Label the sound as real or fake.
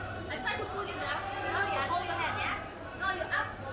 real